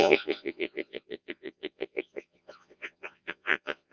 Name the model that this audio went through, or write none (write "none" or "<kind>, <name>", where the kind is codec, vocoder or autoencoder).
vocoder, Vocos